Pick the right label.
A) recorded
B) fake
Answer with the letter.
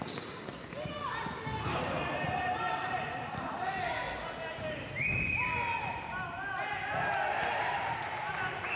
A